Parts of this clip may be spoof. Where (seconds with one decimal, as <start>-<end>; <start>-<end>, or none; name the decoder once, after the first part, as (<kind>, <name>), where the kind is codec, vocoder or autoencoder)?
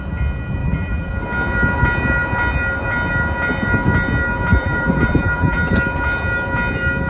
0.6-1.1 (vocoder, BigVGAN v2); 4.5-5.7